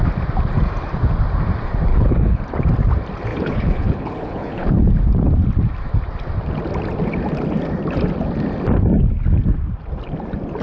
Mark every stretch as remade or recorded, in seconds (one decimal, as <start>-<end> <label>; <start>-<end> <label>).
0.0-1.9 recorded; 1.9-2.4 remade; 2.4-3.3 recorded; 3.3-4.9 remade; 4.9-10.6 recorded